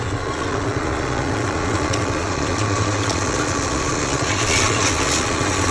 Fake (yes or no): yes